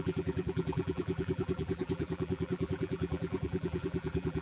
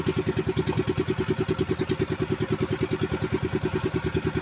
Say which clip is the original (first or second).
second